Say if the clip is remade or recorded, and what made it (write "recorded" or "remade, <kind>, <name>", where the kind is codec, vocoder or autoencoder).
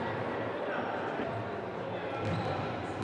recorded